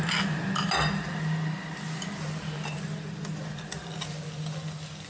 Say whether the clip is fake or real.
real